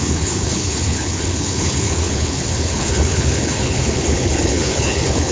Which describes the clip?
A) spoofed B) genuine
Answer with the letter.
A